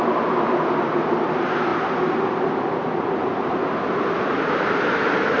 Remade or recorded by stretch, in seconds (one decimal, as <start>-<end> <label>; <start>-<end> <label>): 0.0-5.4 recorded